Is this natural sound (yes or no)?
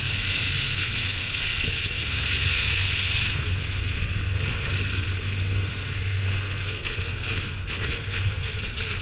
no